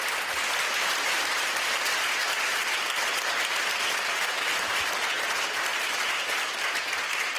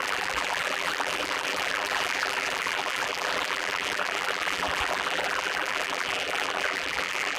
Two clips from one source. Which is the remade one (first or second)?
second